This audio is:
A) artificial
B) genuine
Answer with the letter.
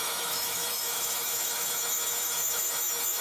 A